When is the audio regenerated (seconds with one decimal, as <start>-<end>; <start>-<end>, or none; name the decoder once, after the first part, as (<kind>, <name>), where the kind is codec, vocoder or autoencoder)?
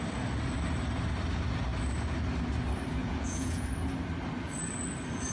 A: 3.0-3.7 (vocoder, Vocos)